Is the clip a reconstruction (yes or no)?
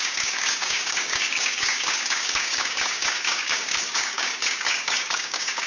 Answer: yes